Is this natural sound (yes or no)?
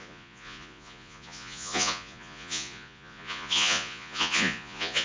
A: no